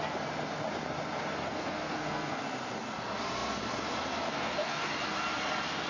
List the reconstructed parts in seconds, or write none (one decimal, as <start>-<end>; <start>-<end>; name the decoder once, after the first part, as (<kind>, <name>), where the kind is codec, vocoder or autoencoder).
1.4-2.4 (codec, SNAC); 4.3-4.9